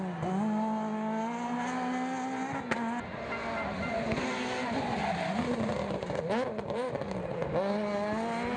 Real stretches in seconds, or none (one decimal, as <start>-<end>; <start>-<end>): 0.0-8.6

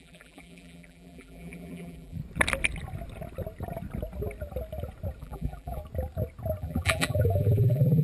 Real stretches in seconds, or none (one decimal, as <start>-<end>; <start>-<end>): 2.2-5.2; 5.8-6.6

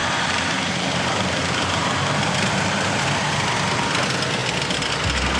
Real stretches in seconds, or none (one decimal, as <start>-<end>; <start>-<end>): 3.2-5.4

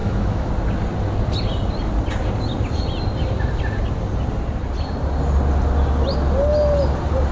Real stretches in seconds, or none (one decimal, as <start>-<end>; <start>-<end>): 0.5-7.3

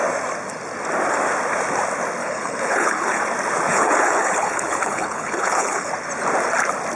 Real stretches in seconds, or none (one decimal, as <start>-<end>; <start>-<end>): 0.0-2.2; 3.2-3.7; 5.9-7.0

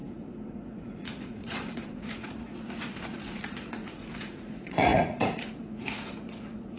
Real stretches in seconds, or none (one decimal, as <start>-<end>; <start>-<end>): none